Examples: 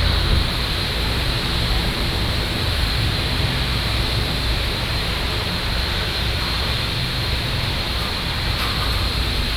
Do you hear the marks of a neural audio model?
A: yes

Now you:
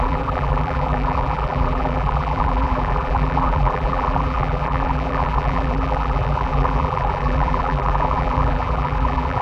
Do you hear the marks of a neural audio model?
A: yes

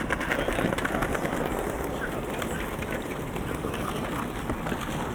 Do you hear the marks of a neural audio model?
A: no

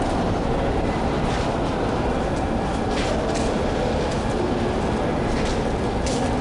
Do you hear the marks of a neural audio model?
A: no